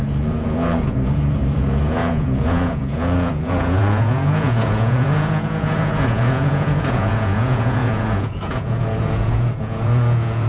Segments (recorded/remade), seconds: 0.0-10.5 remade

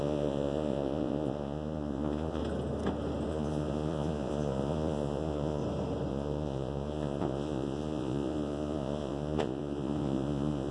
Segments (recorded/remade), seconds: 0.0-2.4 remade; 2.4-3.3 recorded; 3.3-5.6 remade; 5.6-6.1 recorded; 6.1-10.7 remade

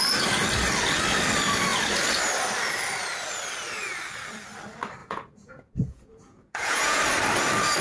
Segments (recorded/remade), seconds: 0.0-5.0 recorded; 5.0-7.0 remade; 7.0-7.8 recorded